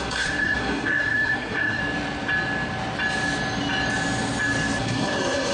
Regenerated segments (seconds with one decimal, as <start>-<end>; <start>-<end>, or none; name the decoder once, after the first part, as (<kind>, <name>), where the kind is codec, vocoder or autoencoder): 0.0-1.8 (codec, SNAC); 4.8-5.5